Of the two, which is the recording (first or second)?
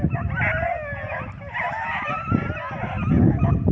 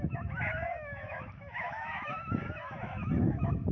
first